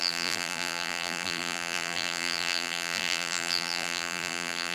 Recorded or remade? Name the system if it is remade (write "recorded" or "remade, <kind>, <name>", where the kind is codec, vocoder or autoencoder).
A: remade, vocoder, BigVGAN v2